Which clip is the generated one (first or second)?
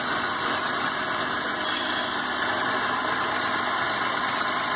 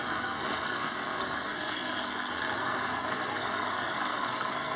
second